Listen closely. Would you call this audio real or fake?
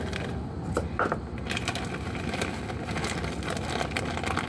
real